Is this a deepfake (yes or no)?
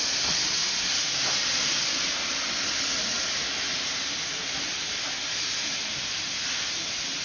no